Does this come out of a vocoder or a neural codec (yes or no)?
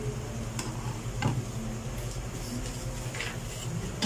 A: no